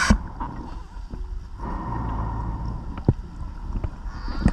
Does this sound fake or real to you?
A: real